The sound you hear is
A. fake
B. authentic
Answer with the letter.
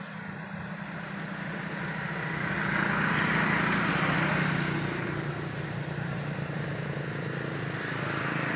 B